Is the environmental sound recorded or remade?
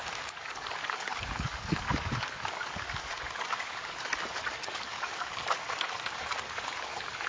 remade